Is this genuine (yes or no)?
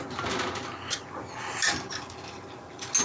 yes